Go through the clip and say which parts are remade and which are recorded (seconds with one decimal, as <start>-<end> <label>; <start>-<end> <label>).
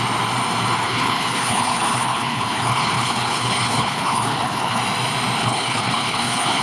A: 0.0-0.8 recorded; 0.8-4.8 remade; 4.8-5.4 recorded; 5.4-6.6 remade